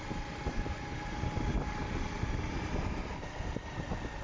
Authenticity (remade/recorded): recorded